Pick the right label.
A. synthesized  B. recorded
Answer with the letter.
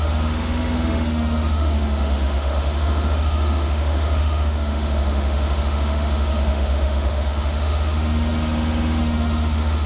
A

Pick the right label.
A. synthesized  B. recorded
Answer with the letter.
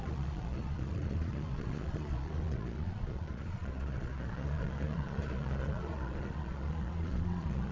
A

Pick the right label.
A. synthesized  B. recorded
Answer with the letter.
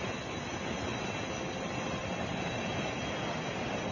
B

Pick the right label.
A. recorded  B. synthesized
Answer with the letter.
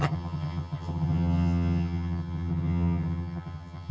B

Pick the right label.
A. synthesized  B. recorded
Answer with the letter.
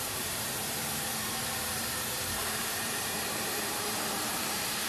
A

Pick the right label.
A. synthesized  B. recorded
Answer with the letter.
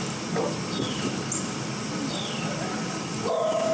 B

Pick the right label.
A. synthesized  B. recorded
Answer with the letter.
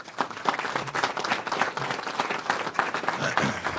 B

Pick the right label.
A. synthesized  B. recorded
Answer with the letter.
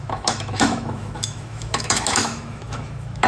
A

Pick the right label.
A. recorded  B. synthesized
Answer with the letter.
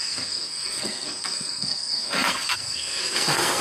B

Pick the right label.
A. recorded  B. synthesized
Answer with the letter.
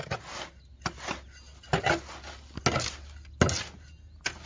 A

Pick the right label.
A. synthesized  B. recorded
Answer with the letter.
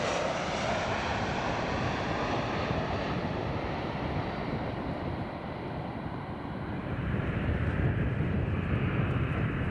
A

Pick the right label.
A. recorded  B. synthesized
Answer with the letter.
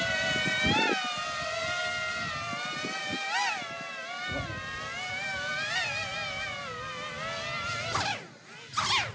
A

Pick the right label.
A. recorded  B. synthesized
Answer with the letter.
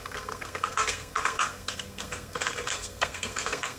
B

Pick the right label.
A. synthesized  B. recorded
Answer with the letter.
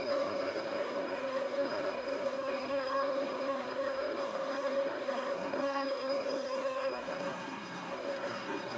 A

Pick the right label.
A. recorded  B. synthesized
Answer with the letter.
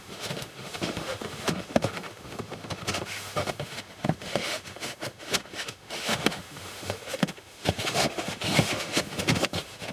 B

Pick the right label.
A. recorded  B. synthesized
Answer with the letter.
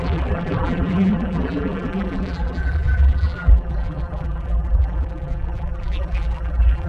B